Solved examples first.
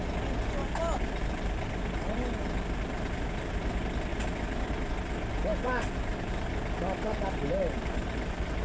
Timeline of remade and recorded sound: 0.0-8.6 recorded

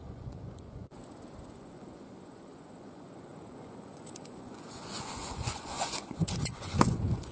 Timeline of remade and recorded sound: 0.0-1.0 remade; 1.0-1.5 recorded; 1.5-7.3 remade

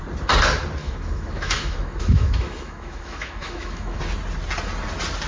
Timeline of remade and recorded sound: 0.0-0.8 recorded; 0.8-4.0 remade; 4.0-5.3 recorded

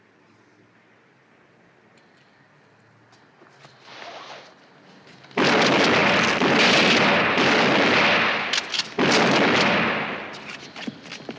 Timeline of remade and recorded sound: 0.0-11.4 recorded